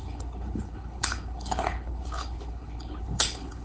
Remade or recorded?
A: remade